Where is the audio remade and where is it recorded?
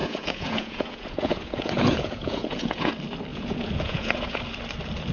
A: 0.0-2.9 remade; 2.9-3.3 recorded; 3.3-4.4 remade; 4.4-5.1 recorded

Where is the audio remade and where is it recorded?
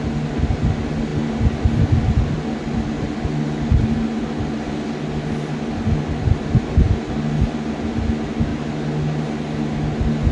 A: 0.0-10.3 recorded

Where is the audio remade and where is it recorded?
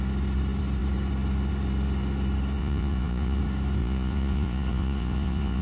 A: 0.0-2.6 recorded; 2.6-3.4 remade; 3.4-3.8 recorded; 3.8-5.6 remade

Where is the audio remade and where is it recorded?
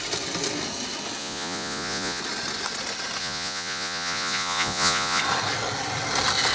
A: 0.0-1.2 recorded; 1.2-2.2 remade; 2.2-3.2 recorded; 3.2-5.2 remade; 5.2-6.5 recorded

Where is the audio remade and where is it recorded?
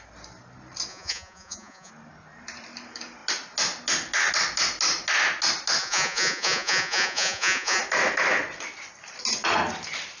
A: 0.0-0.9 recorded; 0.9-1.9 remade; 1.9-5.8 recorded; 5.8-7.8 remade; 7.8-10.2 recorded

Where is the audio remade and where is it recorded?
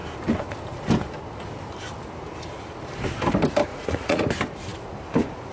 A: 0.0-3.7 recorded; 3.7-4.3 remade; 4.3-5.5 recorded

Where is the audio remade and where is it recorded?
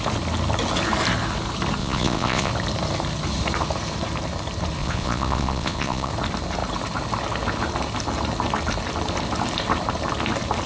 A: 0.0-1.8 recorded; 1.8-2.5 remade; 2.5-4.8 recorded; 4.8-6.1 remade; 6.1-10.7 recorded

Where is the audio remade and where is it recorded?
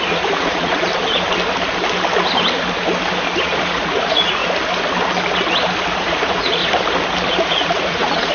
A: 0.0-0.9 remade; 0.9-3.4 recorded; 3.4-4.4 remade; 4.4-5.9 recorded; 5.9-6.6 remade; 6.6-7.4 recorded; 7.4-8.3 remade